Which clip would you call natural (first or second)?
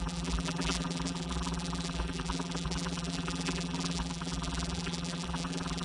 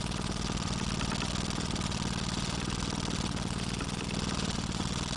second